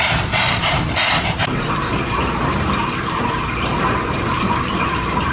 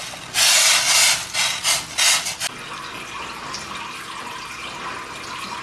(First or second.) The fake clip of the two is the first